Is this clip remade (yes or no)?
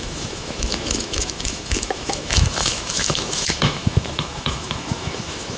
yes